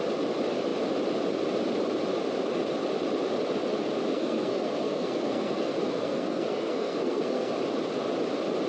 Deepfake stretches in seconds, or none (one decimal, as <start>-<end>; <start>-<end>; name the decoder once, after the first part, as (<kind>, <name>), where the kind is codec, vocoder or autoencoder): 4.1-7.5 (codec, SNAC)